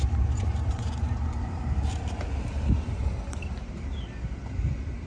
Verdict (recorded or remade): remade